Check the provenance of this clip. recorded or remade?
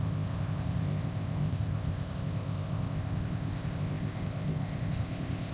remade